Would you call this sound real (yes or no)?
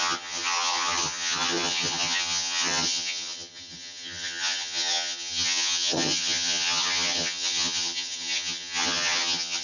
no